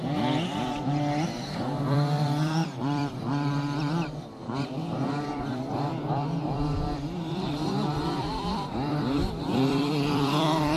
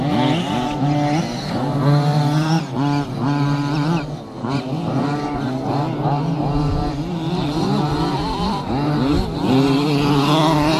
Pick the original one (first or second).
second